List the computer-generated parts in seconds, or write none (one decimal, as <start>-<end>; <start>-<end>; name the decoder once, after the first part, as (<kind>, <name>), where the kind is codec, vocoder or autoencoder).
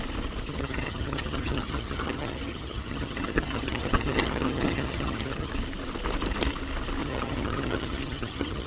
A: 0.5-5.5 (vocoder, HiFi-GAN); 7.0-8.7